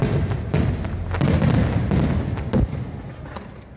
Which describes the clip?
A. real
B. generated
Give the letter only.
A